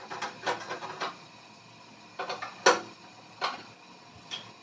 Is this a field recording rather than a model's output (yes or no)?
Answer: yes